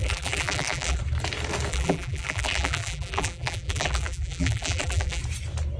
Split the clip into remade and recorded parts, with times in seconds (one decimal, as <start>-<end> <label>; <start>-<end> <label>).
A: 0.0-1.0 remade; 1.0-1.7 recorded; 1.7-5.2 remade; 5.2-5.8 recorded